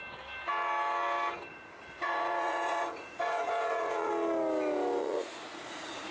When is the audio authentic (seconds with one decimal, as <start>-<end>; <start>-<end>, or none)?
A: 0.0-1.5; 4.1-5.0